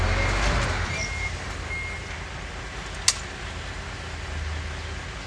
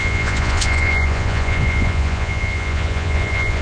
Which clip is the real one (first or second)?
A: first